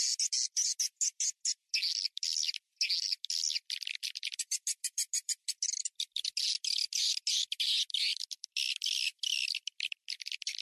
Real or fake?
real